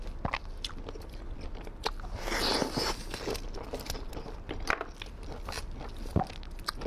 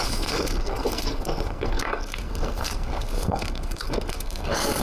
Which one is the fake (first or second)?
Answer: second